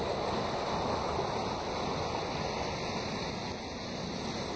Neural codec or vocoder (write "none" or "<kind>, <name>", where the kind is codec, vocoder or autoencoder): none